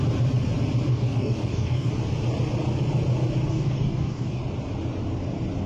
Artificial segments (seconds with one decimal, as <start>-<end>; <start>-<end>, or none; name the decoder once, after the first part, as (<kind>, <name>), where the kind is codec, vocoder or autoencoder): 0.9-1.9 (codec, DAC); 3.5-4.4